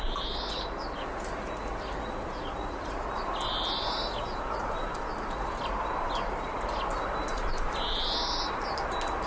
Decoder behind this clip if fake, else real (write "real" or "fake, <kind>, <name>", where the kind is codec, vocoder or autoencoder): real